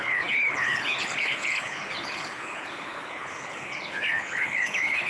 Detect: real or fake fake